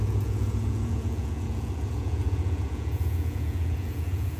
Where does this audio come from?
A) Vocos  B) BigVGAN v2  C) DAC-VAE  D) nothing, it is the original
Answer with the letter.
A